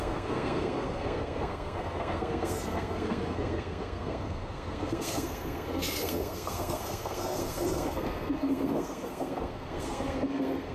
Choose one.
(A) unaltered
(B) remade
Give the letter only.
B